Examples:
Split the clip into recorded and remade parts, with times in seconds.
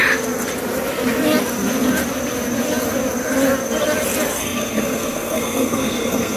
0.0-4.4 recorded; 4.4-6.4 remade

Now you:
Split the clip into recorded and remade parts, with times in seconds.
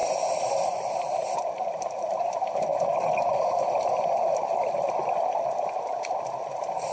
0.0-6.9 recorded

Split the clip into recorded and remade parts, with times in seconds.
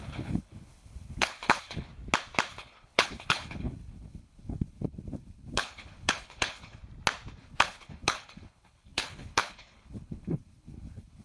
0.0-1.9 remade; 1.9-2.5 recorded; 2.5-6.8 remade; 6.8-7.4 recorded; 7.4-11.2 remade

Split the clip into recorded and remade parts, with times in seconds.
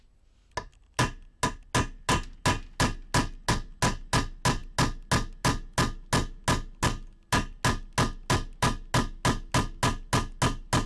0.0-10.9 recorded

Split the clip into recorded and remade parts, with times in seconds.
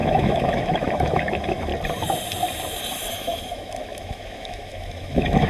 0.0-1.7 remade; 1.7-3.1 recorded; 3.1-5.5 remade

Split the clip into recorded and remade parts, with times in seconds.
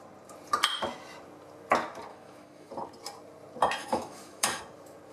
0.0-2.1 recorded; 2.1-2.7 remade; 2.7-3.8 recorded; 3.8-4.6 remade; 4.6-5.1 recorded